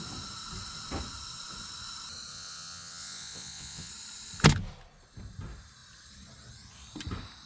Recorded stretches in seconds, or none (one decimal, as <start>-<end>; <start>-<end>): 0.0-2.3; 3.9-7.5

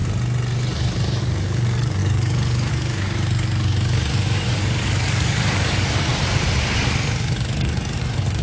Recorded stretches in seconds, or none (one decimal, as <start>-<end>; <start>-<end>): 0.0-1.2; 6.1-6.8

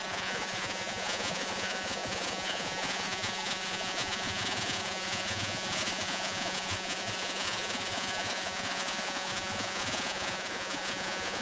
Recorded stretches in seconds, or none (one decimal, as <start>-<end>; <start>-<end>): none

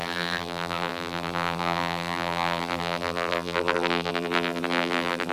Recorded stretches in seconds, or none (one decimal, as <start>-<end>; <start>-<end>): none

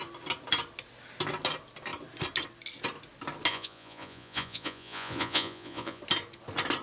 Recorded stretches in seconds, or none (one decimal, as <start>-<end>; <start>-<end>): 0.0-3.5; 6.0-6.8

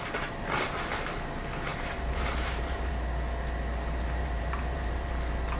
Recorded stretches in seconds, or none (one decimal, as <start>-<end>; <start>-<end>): 0.0-1.7; 2.9-4.2; 5.1-5.6

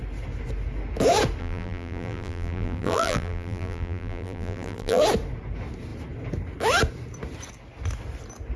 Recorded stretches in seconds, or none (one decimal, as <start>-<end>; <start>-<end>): 0.0-1.4; 5.0-8.6